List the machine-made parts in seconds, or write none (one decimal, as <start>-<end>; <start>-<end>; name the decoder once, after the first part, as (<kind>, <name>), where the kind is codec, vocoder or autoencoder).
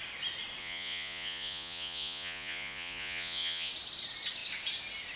0.6-3.7 (vocoder, Vocos)